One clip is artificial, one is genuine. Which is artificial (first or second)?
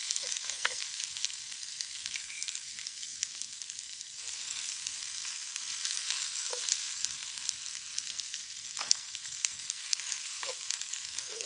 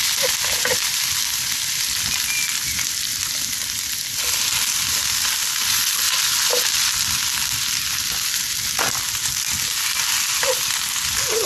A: first